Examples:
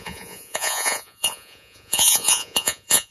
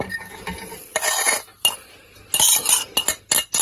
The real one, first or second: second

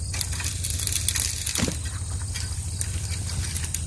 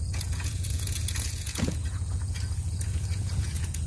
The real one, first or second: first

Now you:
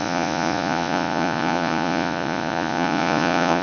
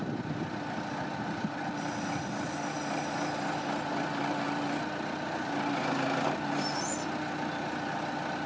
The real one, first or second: second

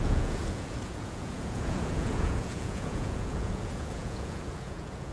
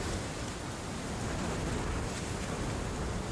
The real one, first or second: second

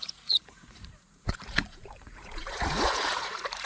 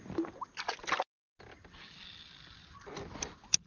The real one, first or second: second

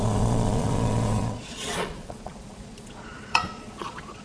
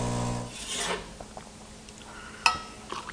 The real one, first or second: second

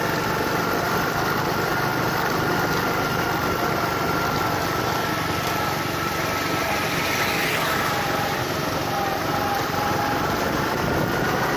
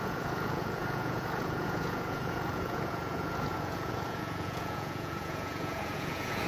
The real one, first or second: first